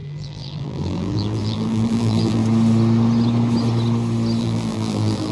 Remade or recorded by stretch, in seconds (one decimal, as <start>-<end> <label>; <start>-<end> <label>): 0.0-2.4 remade; 2.4-4.4 recorded; 4.4-5.3 remade